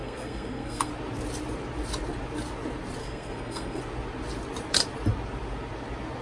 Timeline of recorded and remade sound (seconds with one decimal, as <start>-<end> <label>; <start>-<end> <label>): 0.0-0.9 remade; 0.9-3.0 recorded; 3.0-3.8 remade; 3.8-6.2 recorded